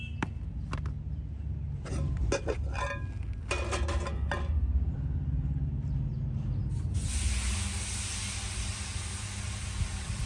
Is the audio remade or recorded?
recorded